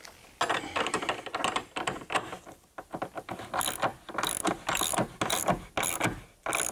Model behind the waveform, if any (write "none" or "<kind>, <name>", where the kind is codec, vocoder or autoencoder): none